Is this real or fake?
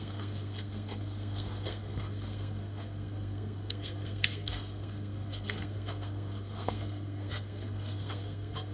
fake